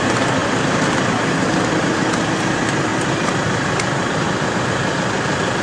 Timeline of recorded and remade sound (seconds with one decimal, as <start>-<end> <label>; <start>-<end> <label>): 0.0-5.6 recorded